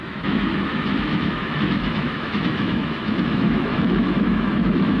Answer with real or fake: fake